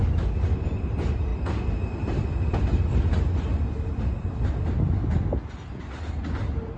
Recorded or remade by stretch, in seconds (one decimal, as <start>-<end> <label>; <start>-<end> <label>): 0.0-6.8 recorded